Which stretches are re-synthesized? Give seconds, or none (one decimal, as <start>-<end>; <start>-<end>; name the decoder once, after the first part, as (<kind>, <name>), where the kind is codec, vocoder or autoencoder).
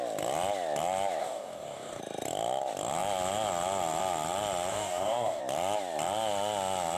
1.2-2.0 (codec, DAC); 4.7-5.4